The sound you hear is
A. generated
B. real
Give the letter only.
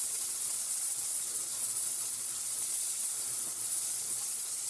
A